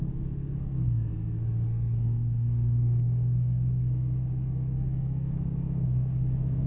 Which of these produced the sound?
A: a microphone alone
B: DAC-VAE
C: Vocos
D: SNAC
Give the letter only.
D